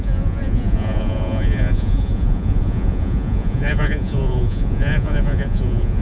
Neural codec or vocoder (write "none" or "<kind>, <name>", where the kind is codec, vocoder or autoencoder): vocoder, Vocos